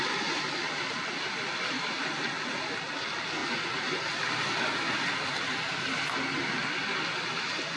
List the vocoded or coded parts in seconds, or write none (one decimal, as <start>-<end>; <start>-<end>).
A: none